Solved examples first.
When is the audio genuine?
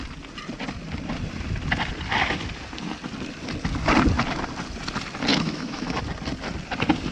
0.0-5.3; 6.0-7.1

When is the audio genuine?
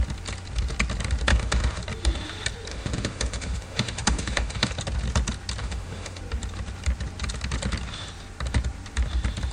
0.0-1.3; 1.8-2.7; 4.7-5.6; 6.2-9.5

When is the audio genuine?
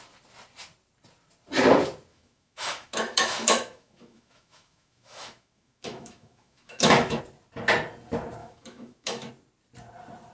0.0-2.1; 7.2-8.4; 9.3-10.3